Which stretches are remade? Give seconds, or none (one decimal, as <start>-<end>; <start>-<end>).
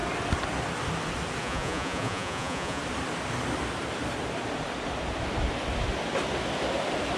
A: 1.4-2.8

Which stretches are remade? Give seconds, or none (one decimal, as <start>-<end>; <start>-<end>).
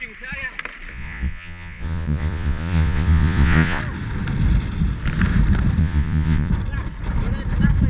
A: 0.9-3.8; 5.8-6.5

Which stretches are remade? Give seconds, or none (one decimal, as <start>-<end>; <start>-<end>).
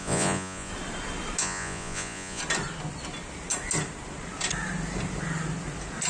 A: 0.0-0.7; 1.4-2.4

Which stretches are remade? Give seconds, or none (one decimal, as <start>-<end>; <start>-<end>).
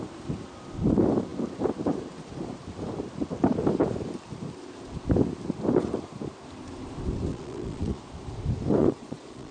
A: 7.3-8.0; 8.8-9.5